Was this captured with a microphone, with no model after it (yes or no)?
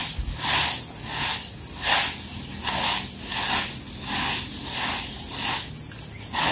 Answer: yes